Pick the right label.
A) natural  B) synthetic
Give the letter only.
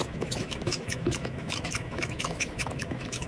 B